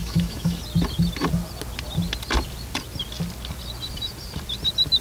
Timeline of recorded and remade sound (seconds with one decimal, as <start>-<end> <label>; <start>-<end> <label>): 0.0-0.6 remade; 0.6-5.0 recorded